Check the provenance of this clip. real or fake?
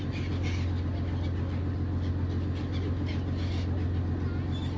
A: real